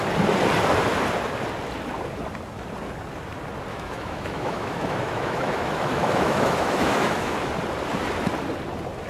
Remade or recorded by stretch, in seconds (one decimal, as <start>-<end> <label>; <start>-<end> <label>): 0.0-3.7 recorded; 3.7-7.5 remade; 7.5-9.1 recorded

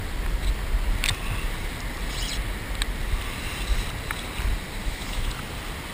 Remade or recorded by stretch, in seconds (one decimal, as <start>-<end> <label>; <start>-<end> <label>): 0.0-4.8 recorded; 4.8-5.3 remade; 5.3-5.9 recorded

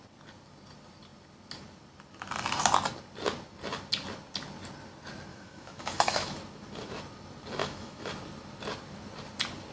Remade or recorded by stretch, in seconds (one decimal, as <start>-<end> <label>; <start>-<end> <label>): 0.0-5.3 recorded; 5.3-6.4 remade; 6.4-7.6 recorded; 7.6-8.1 remade; 8.1-9.7 recorded

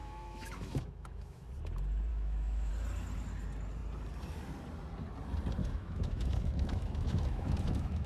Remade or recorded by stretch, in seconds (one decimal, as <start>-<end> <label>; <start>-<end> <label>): 0.0-1.5 remade; 1.5-2.1 recorded; 2.1-2.7 remade; 2.7-5.6 recorded; 5.6-8.1 remade

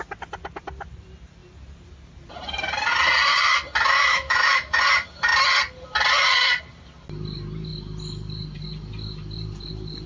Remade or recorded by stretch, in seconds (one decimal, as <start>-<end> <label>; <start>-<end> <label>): 0.0-4.1 recorded; 4.1-4.8 remade; 4.8-10.1 recorded

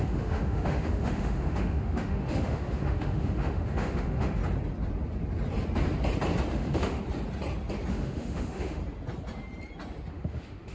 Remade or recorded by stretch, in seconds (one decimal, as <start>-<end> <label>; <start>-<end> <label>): 0.0-4.4 remade; 4.4-6.5 recorded; 6.5-7.0 remade; 7.0-7.9 recorded; 7.9-8.8 remade; 8.8-10.1 recorded; 10.1-10.7 remade

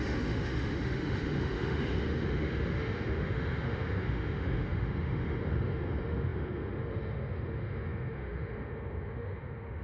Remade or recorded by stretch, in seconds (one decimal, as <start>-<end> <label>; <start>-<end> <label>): 0.0-9.8 remade

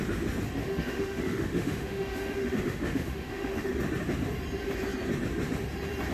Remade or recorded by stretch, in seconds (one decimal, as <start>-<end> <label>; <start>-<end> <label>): 0.0-0.6 recorded; 0.6-3.7 remade; 3.7-6.1 recorded